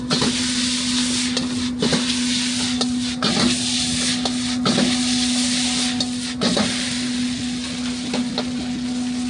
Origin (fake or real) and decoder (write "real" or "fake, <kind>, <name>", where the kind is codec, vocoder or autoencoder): real